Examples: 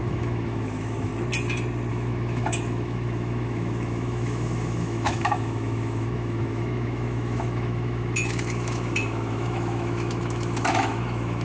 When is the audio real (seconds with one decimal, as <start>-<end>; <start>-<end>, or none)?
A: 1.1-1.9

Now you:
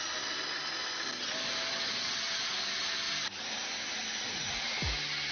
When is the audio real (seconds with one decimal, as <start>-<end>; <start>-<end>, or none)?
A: 0.0-5.3

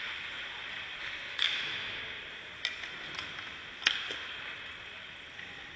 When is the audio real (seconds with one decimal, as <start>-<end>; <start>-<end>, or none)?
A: 0.0-1.3; 2.0-5.8

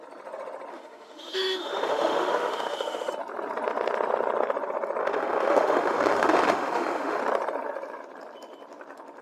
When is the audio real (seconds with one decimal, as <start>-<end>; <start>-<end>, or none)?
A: 0.0-0.7; 3.1-5.0; 7.2-9.2

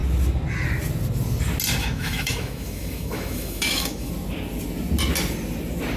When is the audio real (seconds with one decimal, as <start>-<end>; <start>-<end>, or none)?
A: 0.0-1.8; 4.1-6.0

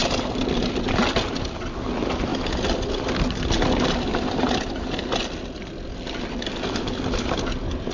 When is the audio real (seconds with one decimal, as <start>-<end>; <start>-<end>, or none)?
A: 0.0-7.9